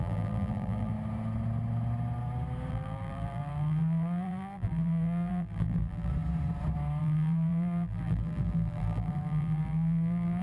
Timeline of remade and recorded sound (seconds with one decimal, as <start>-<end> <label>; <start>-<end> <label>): 0.0-0.9 remade; 0.9-2.7 recorded; 2.7-6.1 remade; 6.1-7.0 recorded; 7.0-10.4 remade